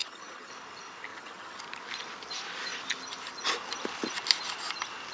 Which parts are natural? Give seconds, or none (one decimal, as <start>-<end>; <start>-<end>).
0.5-1.1; 1.6-5.1